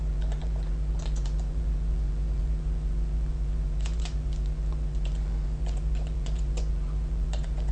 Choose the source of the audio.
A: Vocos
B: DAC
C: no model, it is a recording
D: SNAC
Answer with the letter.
A